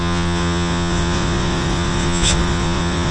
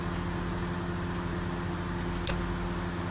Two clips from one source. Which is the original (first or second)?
second